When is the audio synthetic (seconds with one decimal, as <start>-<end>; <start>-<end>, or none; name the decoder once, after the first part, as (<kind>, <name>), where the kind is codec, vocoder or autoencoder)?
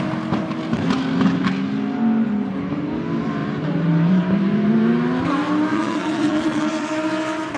5.7-6.9 (vocoder, Vocos)